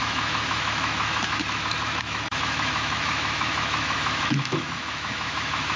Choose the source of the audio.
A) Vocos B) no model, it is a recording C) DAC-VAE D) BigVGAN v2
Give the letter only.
C